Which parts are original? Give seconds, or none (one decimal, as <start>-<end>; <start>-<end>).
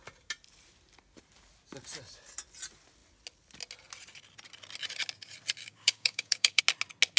0.0-5.6; 6.6-7.2